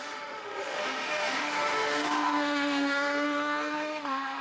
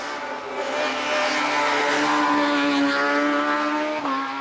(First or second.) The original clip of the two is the second